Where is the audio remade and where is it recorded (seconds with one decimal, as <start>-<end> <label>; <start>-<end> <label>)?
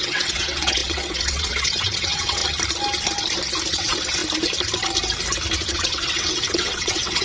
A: 0.0-2.4 remade; 2.4-3.7 recorded; 3.7-4.2 remade; 4.2-5.5 recorded; 5.5-7.2 remade